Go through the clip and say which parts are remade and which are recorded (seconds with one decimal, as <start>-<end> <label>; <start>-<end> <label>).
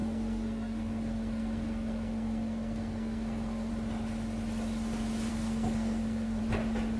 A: 0.0-3.7 remade; 3.7-5.3 recorded; 5.3-6.4 remade; 6.4-7.0 recorded